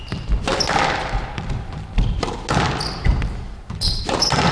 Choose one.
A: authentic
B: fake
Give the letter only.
A